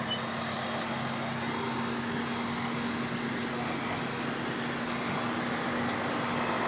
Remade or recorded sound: recorded